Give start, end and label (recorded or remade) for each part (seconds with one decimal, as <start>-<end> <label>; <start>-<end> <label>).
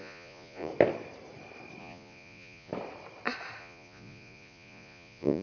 0.0-0.7 remade; 0.7-1.8 recorded; 1.8-2.7 remade; 2.7-3.6 recorded; 3.6-5.4 remade